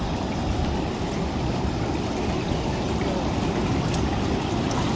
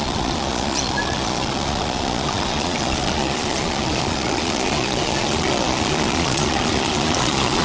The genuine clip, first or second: first